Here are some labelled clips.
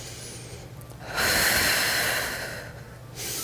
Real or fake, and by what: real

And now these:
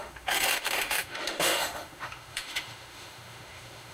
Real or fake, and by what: fake, autoencoder, DAC-VAE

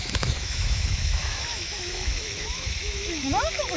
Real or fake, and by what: fake, autoencoder, DAC-VAE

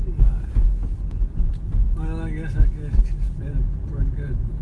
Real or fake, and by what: real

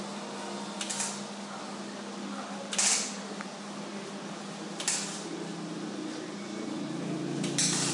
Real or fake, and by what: real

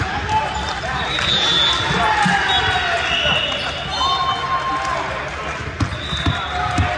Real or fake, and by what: real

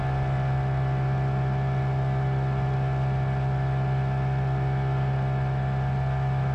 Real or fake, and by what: real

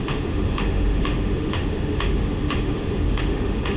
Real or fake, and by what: fake, autoencoder, DAC-VAE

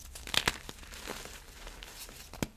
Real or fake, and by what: real